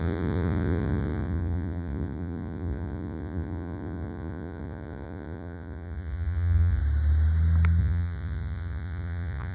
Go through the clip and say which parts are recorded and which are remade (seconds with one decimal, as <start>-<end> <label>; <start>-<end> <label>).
0.0-6.8 remade; 6.8-7.8 recorded; 7.8-9.5 remade